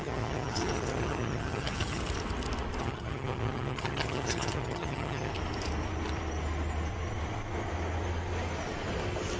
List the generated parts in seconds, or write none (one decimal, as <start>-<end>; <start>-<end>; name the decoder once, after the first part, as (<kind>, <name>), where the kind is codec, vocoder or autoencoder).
0.0-2.0 (vocoder, HiFi-GAN); 2.8-5.3